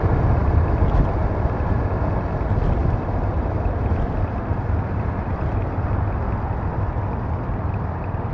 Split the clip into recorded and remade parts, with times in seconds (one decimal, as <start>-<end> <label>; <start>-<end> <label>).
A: 0.0-2.8 recorded; 2.8-6.0 remade; 6.0-8.3 recorded

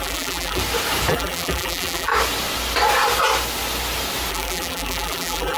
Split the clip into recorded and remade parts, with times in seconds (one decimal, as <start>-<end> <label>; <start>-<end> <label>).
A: 0.0-0.6 remade; 0.6-1.1 recorded; 1.1-2.1 remade; 2.1-4.3 recorded; 4.3-5.6 remade

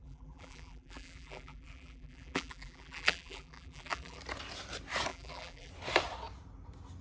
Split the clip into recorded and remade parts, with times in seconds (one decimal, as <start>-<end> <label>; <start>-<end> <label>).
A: 0.0-4.2 remade; 4.2-5.1 recorded; 5.1-5.7 remade; 5.7-7.0 recorded

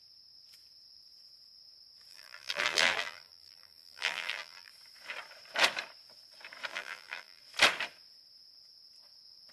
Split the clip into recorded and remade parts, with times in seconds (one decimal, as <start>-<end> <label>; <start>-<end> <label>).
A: 0.0-2.1 recorded; 2.1-4.7 remade; 4.7-6.7 recorded; 6.7-7.4 remade; 7.4-9.5 recorded

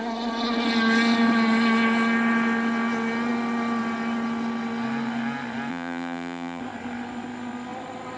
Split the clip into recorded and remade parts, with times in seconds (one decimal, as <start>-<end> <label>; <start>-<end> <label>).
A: 0.0-5.7 recorded; 5.7-6.6 remade; 6.6-8.2 recorded